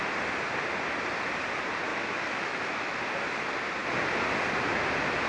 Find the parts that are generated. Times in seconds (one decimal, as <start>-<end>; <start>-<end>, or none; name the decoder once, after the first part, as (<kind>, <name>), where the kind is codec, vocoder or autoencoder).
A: 1.9-3.0 (autoencoder, DAC-VAE)